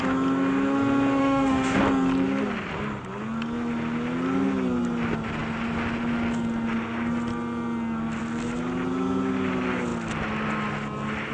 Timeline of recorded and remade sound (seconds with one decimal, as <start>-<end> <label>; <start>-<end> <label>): 0.0-1.2 recorded; 1.2-1.8 remade; 1.8-11.3 recorded